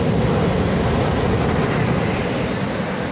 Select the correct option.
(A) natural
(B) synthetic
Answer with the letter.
A